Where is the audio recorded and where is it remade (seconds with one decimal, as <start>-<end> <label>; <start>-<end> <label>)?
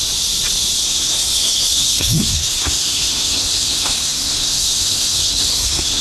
0.0-0.8 recorded; 0.8-6.0 remade